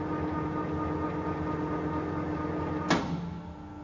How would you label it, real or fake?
real